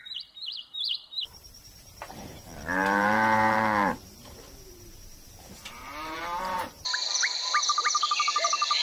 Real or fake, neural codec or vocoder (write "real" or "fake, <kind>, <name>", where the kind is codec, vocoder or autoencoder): fake, vocoder, BigVGAN v2